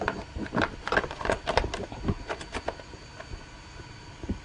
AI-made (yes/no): no